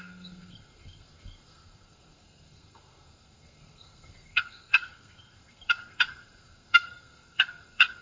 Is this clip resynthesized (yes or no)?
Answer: yes